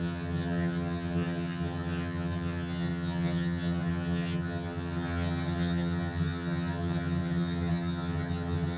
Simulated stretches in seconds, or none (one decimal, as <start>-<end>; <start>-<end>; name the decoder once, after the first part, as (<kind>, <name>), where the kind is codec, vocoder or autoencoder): 0.0-8.8 (vocoder, HiFi-GAN)